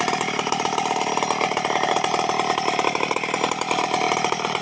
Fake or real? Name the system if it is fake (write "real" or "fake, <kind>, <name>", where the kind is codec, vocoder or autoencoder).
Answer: fake, vocoder, BigVGAN v2